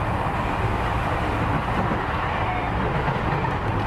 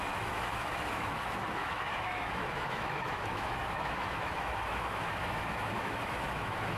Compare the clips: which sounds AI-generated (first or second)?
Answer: second